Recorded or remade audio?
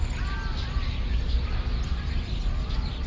recorded